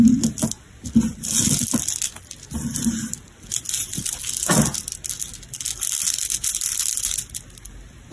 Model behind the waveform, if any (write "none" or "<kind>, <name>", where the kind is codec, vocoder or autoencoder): none